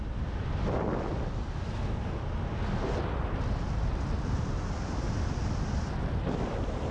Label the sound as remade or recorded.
recorded